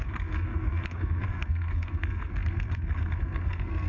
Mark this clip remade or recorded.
remade